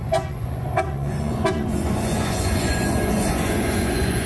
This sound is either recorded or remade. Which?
remade